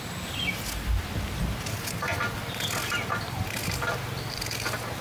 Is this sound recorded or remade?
recorded